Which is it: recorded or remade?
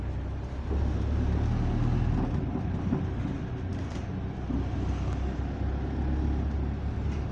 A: recorded